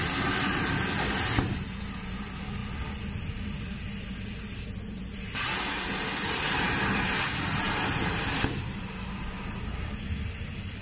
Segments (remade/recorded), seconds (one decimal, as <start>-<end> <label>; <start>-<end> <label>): 0.0-10.8 recorded